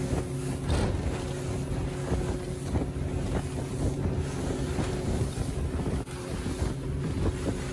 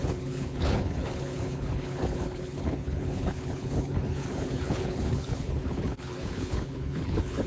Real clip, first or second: first